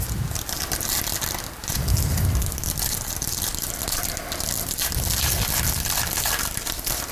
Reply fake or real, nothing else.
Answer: real